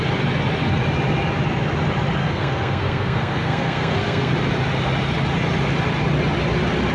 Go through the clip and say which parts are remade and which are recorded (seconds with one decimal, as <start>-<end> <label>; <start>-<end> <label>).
0.0-2.2 recorded; 2.2-4.3 remade; 4.3-6.9 recorded